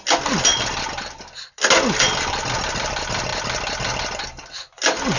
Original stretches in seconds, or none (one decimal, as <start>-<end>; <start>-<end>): 0.0-5.2